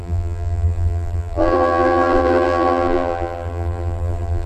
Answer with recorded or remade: remade